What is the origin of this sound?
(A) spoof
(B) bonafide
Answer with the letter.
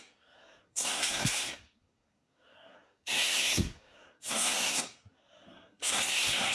A